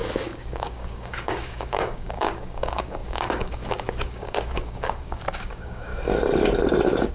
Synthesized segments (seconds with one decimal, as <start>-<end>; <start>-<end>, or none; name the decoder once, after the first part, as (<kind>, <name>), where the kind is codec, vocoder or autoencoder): 0.0-5.9 (codec, DAC)